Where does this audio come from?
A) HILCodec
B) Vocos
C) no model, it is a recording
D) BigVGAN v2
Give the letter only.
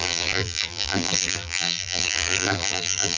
D